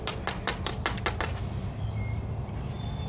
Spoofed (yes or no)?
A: no